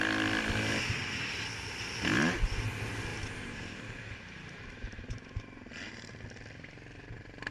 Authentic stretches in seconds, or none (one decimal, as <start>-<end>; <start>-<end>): 0.0-3.1; 5.9-7.5